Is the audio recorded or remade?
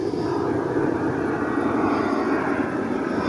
remade